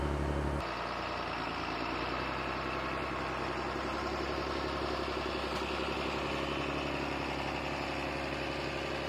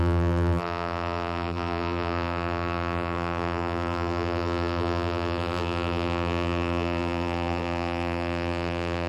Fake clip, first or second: second